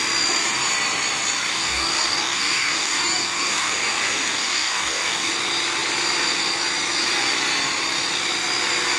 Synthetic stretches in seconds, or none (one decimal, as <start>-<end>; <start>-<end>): 1.5-5.3